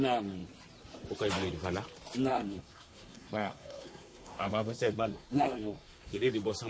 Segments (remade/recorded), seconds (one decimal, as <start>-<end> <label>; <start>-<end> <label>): 0.0-2.3 recorded; 2.3-6.3 remade; 6.3-6.7 recorded